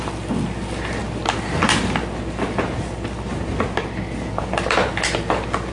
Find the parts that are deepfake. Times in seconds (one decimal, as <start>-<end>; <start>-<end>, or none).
none